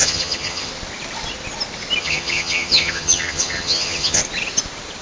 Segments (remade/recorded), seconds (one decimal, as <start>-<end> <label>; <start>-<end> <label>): 0.0-0.7 remade; 0.7-2.0 recorded; 2.0-4.2 remade; 4.2-5.0 recorded

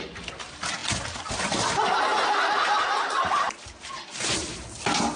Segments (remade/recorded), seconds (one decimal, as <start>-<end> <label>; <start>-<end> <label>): 0.0-0.8 recorded; 0.8-1.3 remade; 1.3-2.1 recorded; 2.1-4.2 remade; 4.2-5.2 recorded

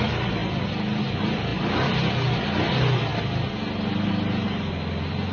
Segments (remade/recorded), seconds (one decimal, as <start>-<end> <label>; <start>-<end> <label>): 0.0-5.3 recorded